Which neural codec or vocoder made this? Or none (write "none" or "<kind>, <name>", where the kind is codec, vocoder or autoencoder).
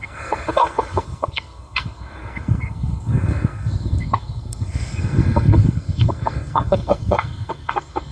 codec, SNAC